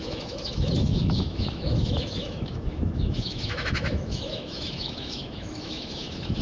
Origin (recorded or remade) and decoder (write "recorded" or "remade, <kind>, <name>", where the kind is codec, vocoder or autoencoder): remade, autoencoder, DAC-VAE